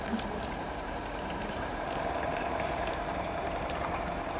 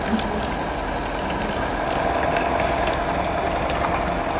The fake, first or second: first